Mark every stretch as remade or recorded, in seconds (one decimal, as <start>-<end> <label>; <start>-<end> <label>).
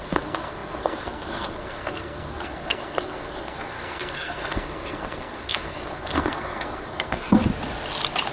0.0-7.4 remade; 7.4-8.3 recorded